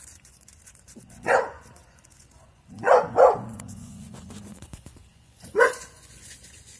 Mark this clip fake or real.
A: fake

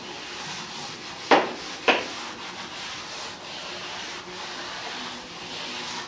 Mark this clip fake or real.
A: fake